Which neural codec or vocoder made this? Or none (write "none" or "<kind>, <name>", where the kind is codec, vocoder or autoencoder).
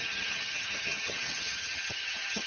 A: vocoder, HiFi-GAN